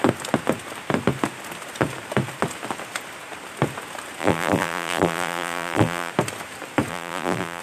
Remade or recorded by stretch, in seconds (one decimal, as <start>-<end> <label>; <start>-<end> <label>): 0.0-4.2 recorded; 4.2-6.1 remade; 6.1-6.9 recorded; 6.9-7.6 remade